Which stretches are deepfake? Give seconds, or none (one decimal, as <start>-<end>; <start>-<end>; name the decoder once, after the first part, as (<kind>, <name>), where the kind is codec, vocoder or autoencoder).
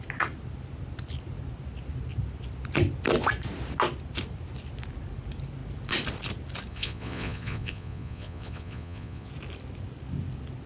6.7-9.3 (vocoder, Vocos)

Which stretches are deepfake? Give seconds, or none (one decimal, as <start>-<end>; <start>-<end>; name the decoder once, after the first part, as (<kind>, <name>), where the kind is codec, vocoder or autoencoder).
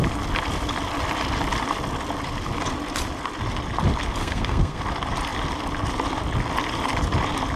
4.2-4.8 (codec, SNAC)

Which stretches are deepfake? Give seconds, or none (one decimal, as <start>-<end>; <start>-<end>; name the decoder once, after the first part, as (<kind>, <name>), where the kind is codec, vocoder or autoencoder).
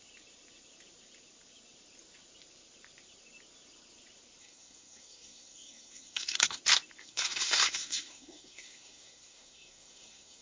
4.4-6.6 (codec, SNAC); 7.0-10.4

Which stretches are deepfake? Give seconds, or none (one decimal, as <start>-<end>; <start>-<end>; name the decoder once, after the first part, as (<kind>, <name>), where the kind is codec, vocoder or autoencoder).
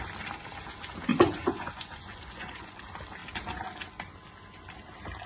1.1-2.8 (vocoder, Vocos)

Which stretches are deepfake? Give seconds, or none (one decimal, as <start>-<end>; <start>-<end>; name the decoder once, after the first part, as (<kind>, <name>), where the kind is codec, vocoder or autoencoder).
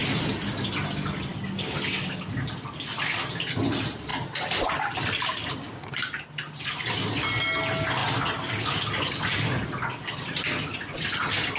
1.3-2.2 (codec, DAC); 5.4-6.0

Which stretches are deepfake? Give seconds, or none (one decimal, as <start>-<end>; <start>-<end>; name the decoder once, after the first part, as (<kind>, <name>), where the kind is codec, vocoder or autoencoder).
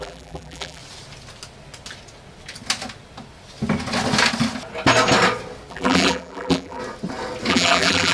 0.0-0.8 (vocoder, BigVGAN v2); 5.7-6.8; 7.5-8.1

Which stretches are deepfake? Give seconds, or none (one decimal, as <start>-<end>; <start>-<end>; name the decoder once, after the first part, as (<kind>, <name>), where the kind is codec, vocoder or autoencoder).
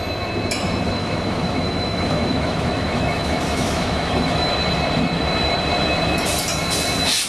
1.0-4.5 (autoencoder, DAC-VAE)